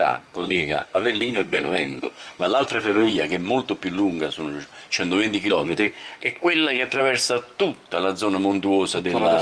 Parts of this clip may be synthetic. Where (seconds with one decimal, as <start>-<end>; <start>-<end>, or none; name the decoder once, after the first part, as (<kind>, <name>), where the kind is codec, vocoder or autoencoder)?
0.0-3.1 (codec, SNAC); 5.5-7.0